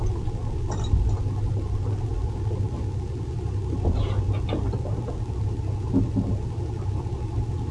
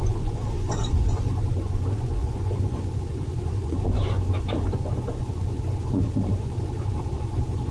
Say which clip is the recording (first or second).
first